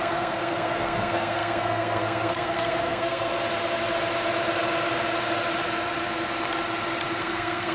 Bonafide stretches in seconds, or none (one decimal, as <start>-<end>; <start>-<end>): 3.3-7.2